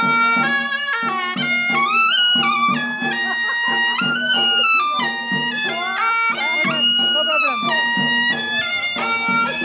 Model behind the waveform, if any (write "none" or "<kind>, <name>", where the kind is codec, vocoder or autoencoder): none